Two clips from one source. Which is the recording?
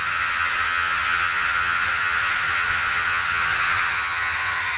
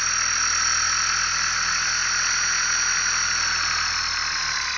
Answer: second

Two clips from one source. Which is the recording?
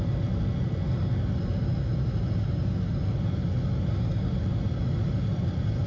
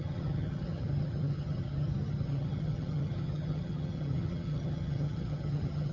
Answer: first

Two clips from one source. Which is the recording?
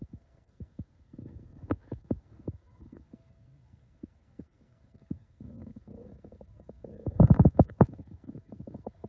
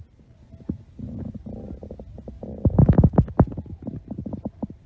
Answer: second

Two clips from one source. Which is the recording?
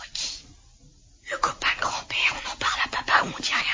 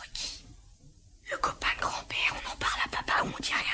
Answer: first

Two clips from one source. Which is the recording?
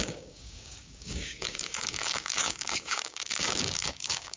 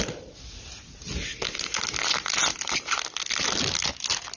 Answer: second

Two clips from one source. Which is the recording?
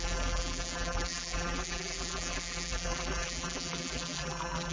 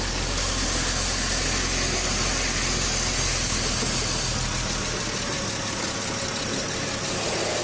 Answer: second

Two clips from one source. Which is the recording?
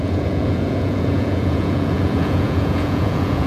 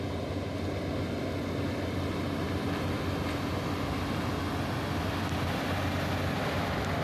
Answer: second